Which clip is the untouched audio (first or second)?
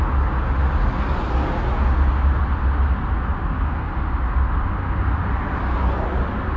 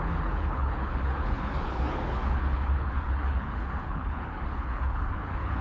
first